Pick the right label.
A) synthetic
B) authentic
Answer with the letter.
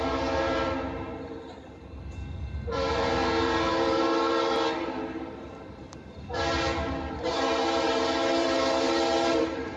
A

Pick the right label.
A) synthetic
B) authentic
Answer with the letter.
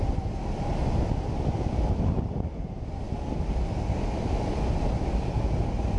B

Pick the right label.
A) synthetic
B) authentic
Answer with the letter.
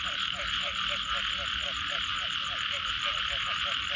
B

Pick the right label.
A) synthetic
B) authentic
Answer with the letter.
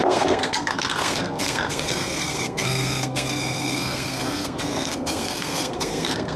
A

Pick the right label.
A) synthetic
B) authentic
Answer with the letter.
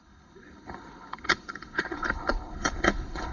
A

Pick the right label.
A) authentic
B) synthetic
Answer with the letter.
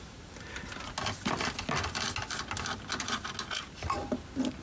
A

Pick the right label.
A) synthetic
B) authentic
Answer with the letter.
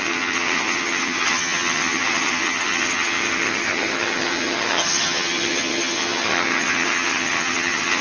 A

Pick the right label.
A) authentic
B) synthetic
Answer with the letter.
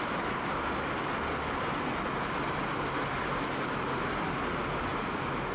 A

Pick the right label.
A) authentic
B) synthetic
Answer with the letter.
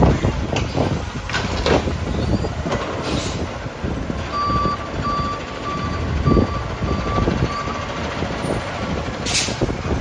A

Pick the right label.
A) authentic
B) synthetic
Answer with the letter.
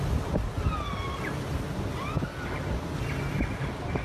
A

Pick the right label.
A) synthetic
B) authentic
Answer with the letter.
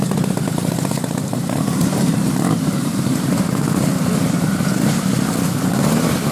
A